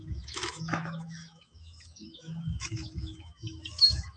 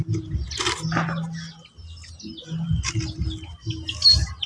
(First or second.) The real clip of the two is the second